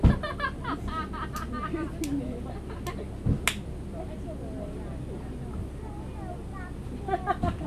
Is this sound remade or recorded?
recorded